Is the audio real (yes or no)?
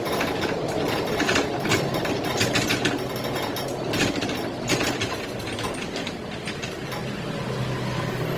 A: yes